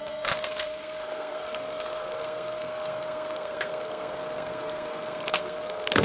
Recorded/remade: remade